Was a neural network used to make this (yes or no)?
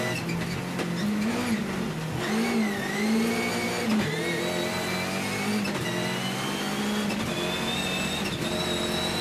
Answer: no